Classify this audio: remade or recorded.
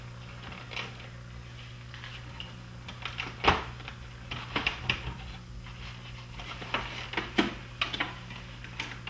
recorded